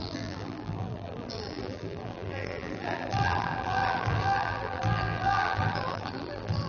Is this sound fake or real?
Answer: fake